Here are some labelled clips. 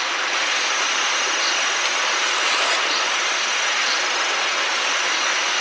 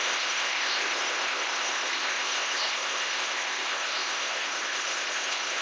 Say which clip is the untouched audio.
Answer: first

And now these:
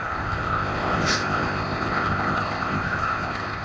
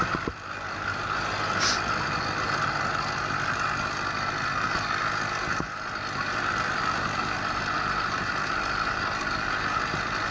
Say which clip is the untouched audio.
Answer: second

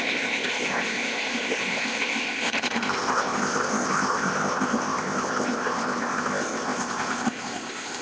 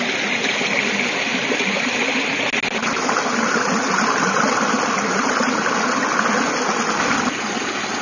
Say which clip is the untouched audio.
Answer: second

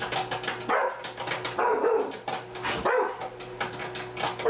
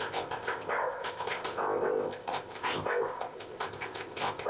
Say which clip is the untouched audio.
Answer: first